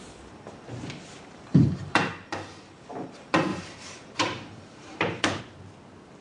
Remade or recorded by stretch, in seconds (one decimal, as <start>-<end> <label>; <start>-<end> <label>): 0.0-1.5 recorded; 1.5-2.1 remade; 2.1-3.5 recorded; 3.5-5.4 remade; 5.4-6.2 recorded